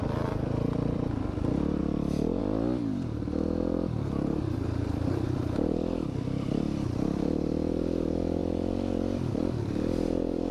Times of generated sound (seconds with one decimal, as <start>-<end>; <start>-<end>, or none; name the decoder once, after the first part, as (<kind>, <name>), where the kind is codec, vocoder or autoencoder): 0.0-1.8 (vocoder, BigVGAN v2); 2.4-10.5